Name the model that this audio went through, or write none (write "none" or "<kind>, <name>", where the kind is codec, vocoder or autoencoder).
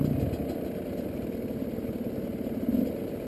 none